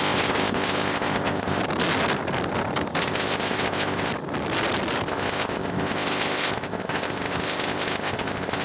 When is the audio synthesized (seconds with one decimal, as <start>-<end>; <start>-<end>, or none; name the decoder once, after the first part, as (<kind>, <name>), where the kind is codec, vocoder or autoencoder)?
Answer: 0.0-1.6 (codec, ZipCodec); 3.0-4.1; 5.1-8.6